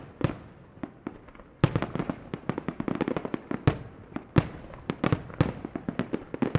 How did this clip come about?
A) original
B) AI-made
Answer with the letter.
A